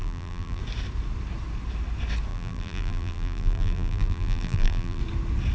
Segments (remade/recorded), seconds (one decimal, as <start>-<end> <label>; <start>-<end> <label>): 0.0-0.6 remade; 0.6-2.3 recorded; 2.3-5.0 remade; 5.0-5.5 recorded